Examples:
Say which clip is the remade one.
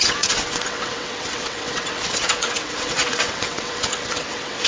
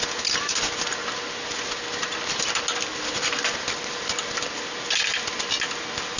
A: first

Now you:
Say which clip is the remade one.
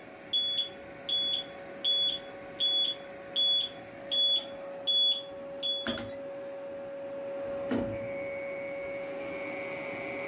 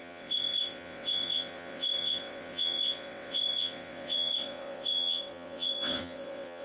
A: second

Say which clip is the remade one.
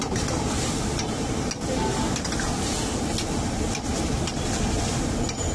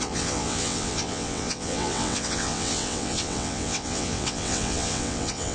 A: second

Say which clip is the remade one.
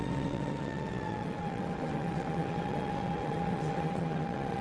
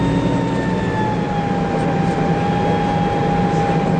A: first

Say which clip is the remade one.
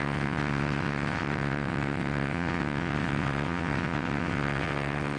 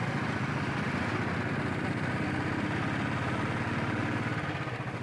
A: first